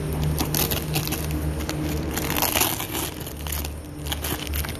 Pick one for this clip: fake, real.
real